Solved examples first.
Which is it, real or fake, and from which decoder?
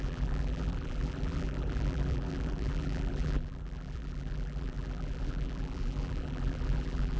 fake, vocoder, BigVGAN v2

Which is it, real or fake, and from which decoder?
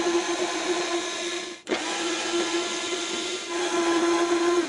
fake, vocoder, Vocos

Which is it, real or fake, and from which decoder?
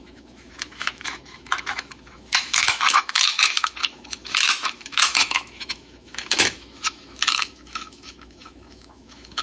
fake, autoencoder, DAC-VAE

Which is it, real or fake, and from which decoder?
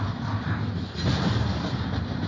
real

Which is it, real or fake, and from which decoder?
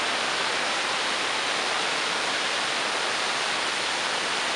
real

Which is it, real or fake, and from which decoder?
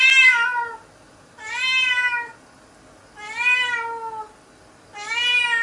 real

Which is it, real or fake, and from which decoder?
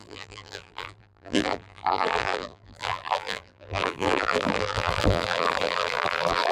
fake, vocoder, BigVGAN v2